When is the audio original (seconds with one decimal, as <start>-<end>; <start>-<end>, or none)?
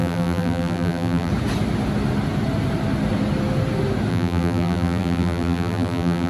1.3-4.1